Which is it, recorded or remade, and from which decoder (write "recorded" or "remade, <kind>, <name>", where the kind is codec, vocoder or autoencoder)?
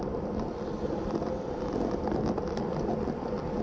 recorded